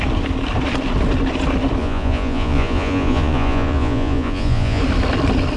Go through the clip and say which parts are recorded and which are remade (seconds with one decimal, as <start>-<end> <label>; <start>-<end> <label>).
0.0-1.8 recorded; 1.8-4.8 remade; 4.8-5.6 recorded